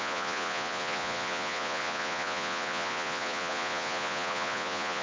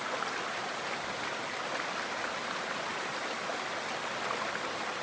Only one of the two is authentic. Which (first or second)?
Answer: second